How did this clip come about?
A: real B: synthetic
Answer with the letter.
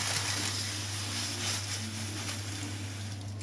A